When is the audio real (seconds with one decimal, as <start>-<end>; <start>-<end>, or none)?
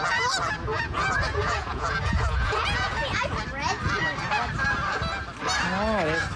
0.0-0.7; 3.2-6.4